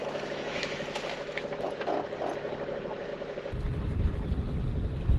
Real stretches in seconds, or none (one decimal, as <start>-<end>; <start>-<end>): 1.5-5.2